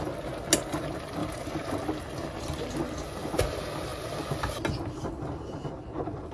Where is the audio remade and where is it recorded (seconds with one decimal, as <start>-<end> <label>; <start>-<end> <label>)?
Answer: 0.0-1.2 recorded; 1.2-2.8 remade; 2.8-6.3 recorded